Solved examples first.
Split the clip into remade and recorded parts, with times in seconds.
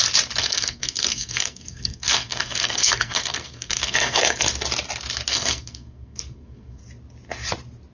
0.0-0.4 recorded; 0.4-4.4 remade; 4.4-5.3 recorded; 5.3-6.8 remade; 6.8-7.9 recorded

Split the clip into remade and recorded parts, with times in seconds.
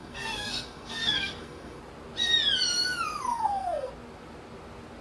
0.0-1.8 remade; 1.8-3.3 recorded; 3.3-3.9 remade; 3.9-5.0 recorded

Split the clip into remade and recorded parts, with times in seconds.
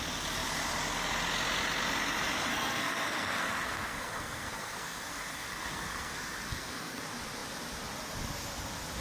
0.0-2.5 recorded; 2.5-7.0 remade; 7.0-9.0 recorded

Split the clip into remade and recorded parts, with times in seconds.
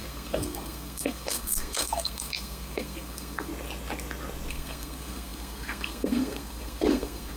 0.0-3.5 remade; 3.5-4.5 recorded; 4.5-7.4 remade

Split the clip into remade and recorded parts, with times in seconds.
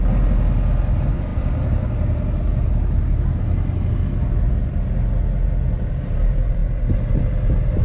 0.0-7.8 recorded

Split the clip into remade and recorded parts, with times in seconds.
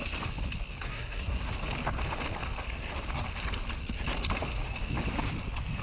0.0-0.9 recorded; 0.9-1.5 remade; 1.5-5.8 recorded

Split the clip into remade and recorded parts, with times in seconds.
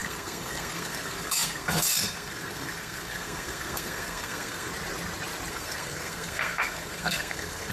0.0-4.7 remade; 4.7-5.5 recorded; 5.5-7.7 remade